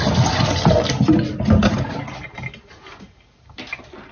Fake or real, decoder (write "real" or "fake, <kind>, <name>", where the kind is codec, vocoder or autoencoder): real